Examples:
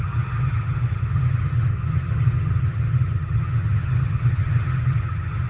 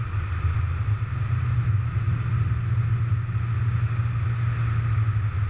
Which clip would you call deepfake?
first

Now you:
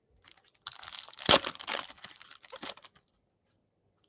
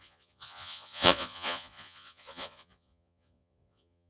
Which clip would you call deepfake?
second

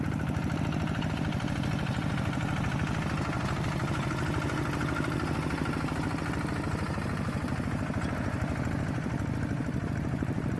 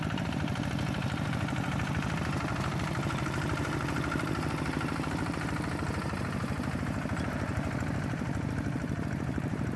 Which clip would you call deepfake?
second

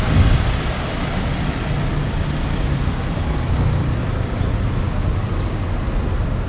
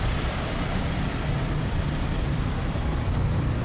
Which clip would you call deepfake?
second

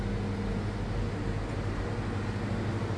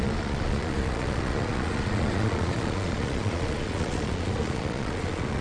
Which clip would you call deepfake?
second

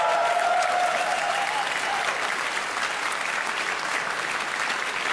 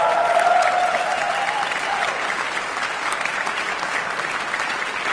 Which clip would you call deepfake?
second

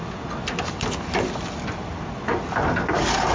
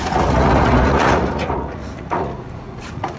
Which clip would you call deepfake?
second